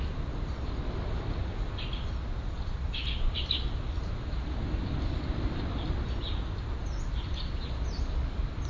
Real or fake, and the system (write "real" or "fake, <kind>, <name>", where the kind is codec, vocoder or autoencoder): real